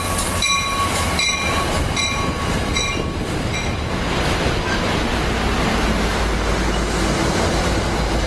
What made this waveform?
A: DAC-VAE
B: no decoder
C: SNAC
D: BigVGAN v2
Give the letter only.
B